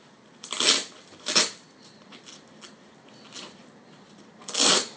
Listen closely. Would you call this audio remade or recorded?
recorded